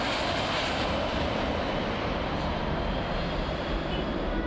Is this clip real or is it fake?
real